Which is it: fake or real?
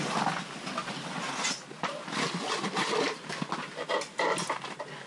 real